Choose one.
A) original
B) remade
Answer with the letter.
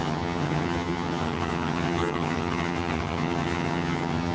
B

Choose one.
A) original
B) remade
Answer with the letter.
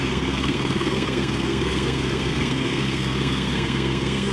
B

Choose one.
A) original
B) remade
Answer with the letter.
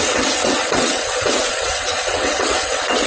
B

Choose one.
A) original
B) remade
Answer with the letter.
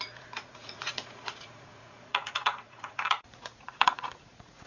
B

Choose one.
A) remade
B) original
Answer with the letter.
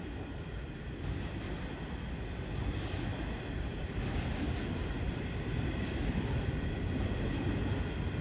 B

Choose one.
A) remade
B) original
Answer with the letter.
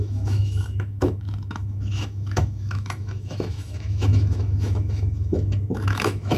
A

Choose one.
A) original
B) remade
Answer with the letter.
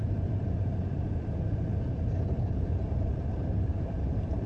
B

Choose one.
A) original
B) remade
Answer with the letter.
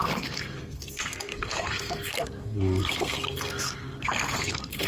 B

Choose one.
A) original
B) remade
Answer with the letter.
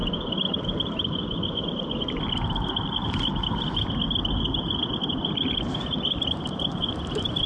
A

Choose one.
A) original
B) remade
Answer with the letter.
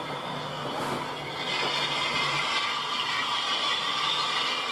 A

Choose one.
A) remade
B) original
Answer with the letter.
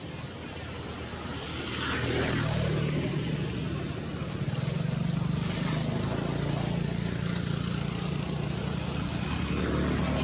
B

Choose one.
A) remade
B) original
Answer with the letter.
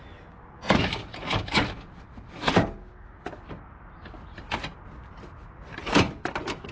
B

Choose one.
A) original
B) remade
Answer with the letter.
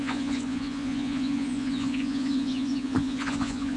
B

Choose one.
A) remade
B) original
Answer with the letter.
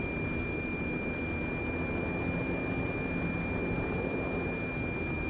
B